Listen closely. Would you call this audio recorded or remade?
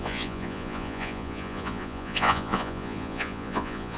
remade